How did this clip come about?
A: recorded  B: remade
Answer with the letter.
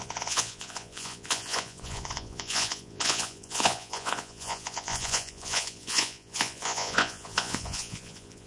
B